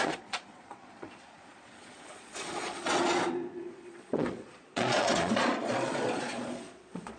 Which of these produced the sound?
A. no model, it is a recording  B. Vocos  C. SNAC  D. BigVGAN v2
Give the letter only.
B